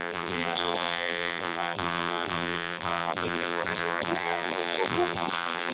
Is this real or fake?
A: fake